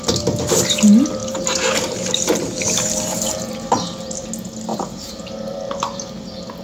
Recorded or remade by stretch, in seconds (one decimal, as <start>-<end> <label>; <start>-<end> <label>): 0.0-1.2 recorded; 1.2-4.3 remade; 4.3-4.7 recorded; 4.7-5.8 remade; 5.8-6.6 recorded